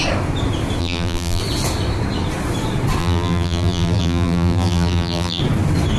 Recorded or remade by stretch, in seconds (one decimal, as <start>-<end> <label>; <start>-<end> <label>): 0.0-0.8 recorded; 0.8-1.4 remade; 1.4-3.0 recorded; 3.0-5.4 remade; 5.4-6.0 recorded